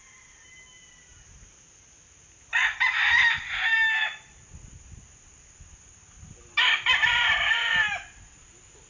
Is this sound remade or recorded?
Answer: recorded